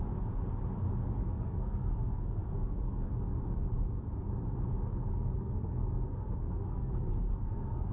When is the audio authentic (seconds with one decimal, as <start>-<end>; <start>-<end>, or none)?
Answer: 0.0-1.2; 3.1-5.1